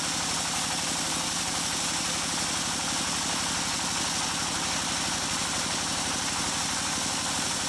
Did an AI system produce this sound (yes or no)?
no